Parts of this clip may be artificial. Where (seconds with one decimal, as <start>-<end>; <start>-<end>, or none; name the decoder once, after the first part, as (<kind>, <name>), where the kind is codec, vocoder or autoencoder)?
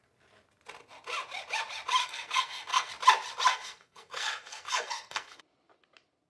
2.0-2.9 (codec, SNAC); 3.5-5.4